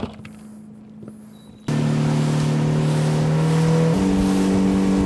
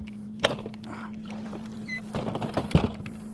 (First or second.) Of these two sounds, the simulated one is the second